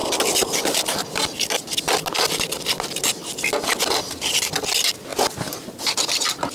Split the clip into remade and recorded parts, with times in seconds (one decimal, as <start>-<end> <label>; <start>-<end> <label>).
0.0-5.1 recorded; 5.1-5.8 remade; 5.8-6.5 recorded

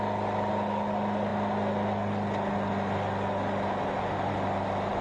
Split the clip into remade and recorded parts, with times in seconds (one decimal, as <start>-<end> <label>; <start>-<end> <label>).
0.0-5.0 recorded

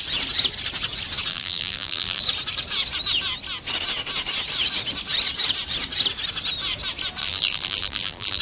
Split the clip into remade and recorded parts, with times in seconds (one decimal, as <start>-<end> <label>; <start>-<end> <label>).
0.0-1.3 recorded; 1.3-2.2 remade; 2.2-7.2 recorded; 7.2-8.4 remade